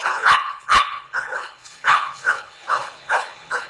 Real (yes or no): no